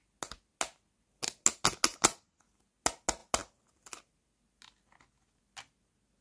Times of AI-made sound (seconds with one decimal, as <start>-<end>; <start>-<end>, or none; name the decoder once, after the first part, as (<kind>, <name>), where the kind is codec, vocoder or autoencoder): 1.9-2.4 (vocoder, Vocos)